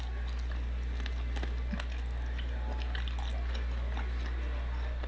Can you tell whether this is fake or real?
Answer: real